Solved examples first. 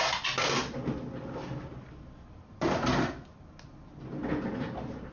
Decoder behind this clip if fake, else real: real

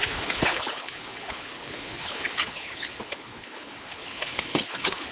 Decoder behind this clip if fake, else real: fake, codec, HILCodec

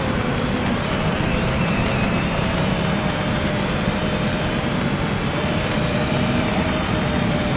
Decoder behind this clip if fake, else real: fake, vocoder, BigVGAN v2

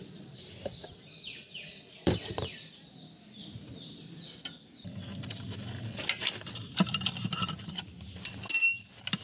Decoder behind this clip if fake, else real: real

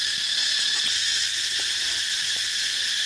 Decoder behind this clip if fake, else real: real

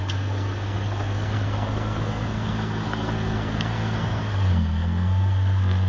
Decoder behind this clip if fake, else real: fake, codec, SNAC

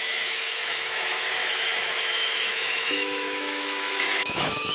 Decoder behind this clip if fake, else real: fake, autoencoder, DAC-VAE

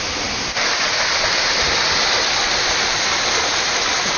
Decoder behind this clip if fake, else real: real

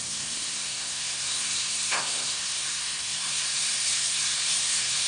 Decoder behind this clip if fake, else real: fake, codec, SNAC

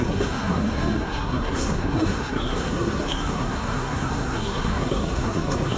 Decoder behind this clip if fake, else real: fake, codec, SNAC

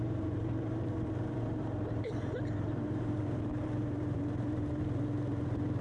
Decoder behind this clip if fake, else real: fake, vocoder, BigVGAN v2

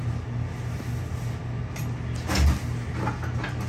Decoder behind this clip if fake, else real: real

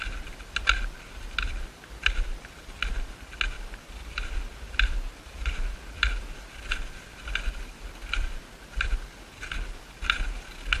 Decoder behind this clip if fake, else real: real